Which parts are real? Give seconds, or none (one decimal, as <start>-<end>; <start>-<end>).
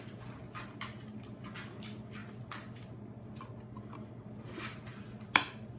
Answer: 0.0-5.8